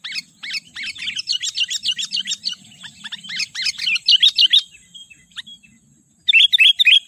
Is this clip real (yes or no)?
yes